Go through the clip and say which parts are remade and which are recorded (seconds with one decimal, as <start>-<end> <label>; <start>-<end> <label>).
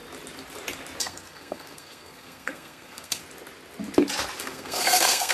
0.0-1.0 recorded; 1.0-3.2 remade; 3.2-4.4 recorded; 4.4-5.3 remade